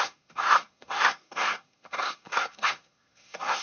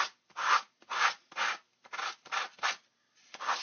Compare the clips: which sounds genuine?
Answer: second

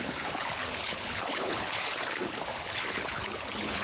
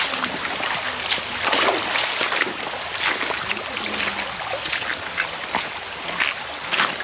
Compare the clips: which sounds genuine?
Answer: second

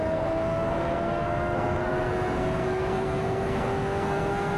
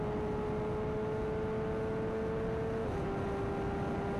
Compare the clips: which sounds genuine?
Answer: second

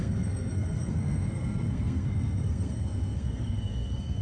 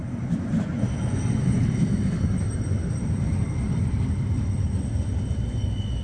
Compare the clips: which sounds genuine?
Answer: second